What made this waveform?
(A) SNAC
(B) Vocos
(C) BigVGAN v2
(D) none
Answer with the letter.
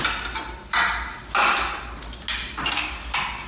D